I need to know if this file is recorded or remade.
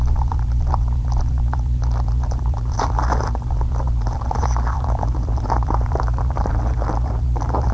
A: remade